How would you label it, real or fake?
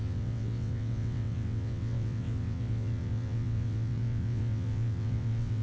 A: fake